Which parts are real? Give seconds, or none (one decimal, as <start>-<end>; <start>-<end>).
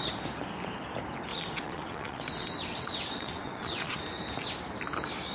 0.0-1.3; 4.0-5.3